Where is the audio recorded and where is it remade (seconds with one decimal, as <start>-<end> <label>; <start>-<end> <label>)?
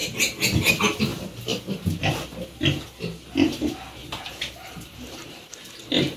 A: 0.0-4.0 recorded; 4.0-5.5 remade; 5.5-6.2 recorded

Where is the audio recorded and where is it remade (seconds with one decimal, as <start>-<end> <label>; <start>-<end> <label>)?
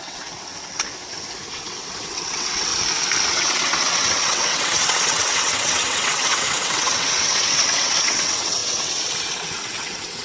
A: 0.0-0.5 remade; 0.5-1.5 recorded; 1.5-2.7 remade; 2.7-3.3 recorded; 3.3-10.2 remade